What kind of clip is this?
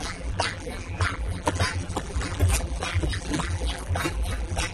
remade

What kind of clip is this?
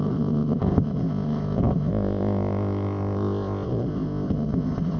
remade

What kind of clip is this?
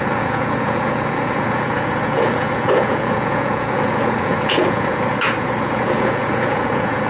remade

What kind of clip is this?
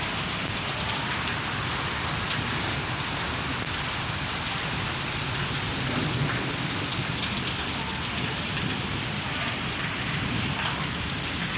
remade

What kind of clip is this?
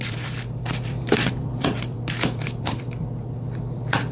remade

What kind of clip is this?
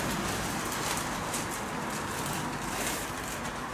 recorded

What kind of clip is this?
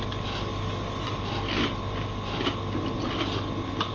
recorded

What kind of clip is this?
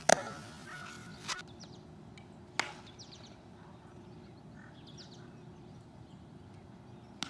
recorded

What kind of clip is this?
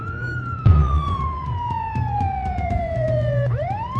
remade